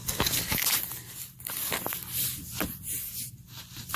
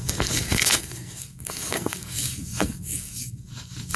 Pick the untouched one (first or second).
first